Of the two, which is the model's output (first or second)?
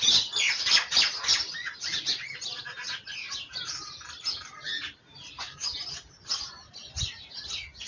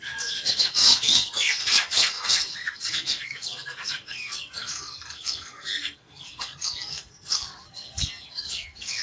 second